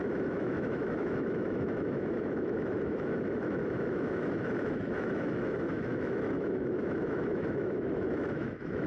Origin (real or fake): fake